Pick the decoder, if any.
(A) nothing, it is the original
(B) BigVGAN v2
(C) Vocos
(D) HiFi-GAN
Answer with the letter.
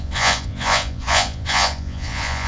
C